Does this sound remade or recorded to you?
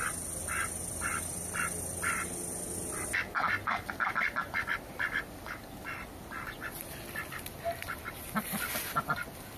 recorded